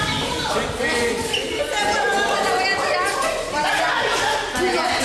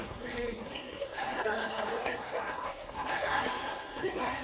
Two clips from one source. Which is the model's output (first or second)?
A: second